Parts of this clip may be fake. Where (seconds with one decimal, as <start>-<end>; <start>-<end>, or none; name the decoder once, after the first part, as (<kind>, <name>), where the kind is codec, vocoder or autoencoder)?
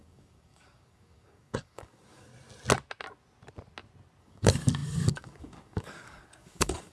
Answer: 0.0-2.3 (codec, DAC); 4.2-6.9